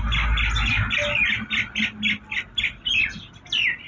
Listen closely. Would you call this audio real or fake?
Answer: real